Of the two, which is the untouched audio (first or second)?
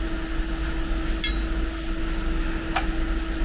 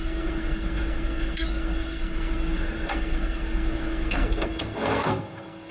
first